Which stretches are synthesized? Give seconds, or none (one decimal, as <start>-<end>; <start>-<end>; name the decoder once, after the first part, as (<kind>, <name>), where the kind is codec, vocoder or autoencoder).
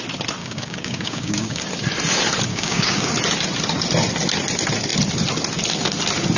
0.4-1.6 (codec, DAC); 2.5-3.1